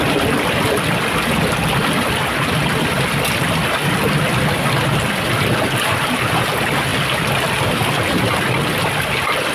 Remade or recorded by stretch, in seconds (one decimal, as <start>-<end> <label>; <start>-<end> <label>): 0.0-9.5 recorded